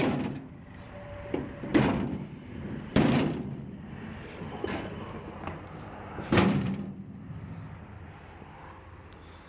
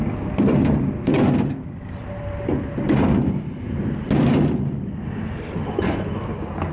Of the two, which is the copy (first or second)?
first